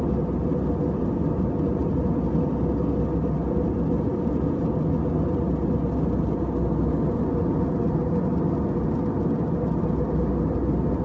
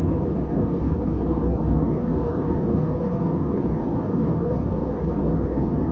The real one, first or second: first